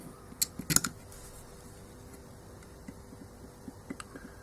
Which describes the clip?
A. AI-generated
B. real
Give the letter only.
B